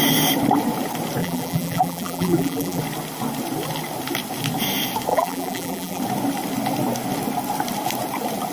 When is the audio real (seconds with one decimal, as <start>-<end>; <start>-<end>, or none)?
0.0-1.2; 2.8-5.1; 6.0-8.5